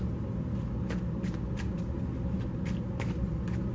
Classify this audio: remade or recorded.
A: recorded